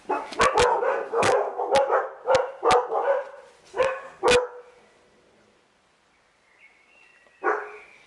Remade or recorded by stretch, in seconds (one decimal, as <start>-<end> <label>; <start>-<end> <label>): 0.0-0.9 recorded; 0.9-1.6 remade; 1.6-3.7 recorded; 3.7-4.2 remade; 4.2-8.1 recorded